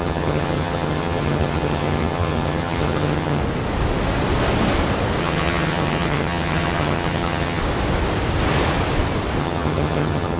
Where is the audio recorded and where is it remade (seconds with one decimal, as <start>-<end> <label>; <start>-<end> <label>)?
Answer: 0.0-3.4 remade; 3.4-5.2 recorded; 5.2-7.6 remade; 7.6-9.4 recorded; 9.4-10.4 remade

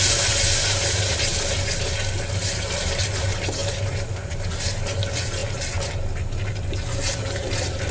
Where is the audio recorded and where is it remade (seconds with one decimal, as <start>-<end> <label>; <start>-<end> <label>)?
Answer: 0.0-7.9 recorded